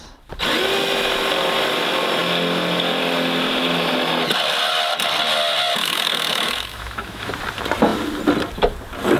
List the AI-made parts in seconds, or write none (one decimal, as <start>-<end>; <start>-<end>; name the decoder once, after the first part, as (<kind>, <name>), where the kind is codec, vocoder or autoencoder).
5.8-7.3 (autoencoder, DAC-VAE)